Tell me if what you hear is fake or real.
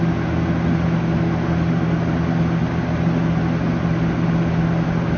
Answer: real